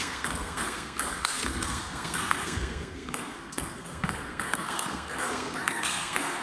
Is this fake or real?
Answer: fake